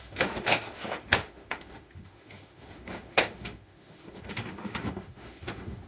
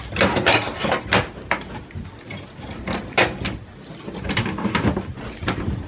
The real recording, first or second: second